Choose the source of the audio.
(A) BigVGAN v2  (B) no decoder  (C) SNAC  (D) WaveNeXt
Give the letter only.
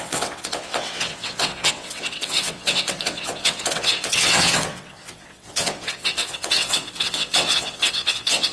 D